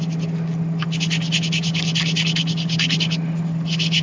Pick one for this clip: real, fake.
real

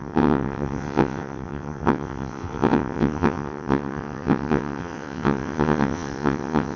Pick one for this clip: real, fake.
fake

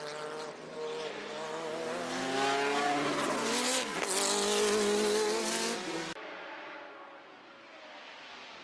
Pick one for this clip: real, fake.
real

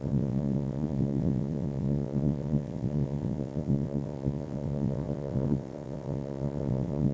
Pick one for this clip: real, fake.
fake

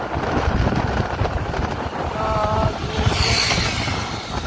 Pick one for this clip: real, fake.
real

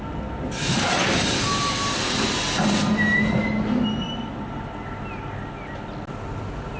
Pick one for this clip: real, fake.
real